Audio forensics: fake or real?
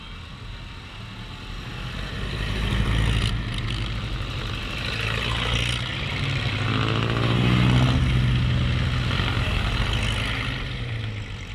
real